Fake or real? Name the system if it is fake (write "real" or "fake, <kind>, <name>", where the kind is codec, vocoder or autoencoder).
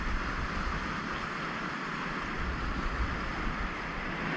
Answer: real